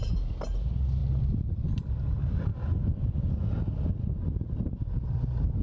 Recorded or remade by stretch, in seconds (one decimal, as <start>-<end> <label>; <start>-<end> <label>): 0.0-5.6 recorded